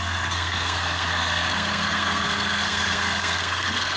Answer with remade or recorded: remade